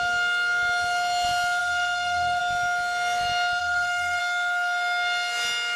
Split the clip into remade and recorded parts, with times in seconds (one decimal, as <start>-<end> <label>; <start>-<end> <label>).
0.0-1.6 recorded; 1.6-2.4 remade; 2.4-3.6 recorded; 3.6-4.2 remade; 4.2-5.8 recorded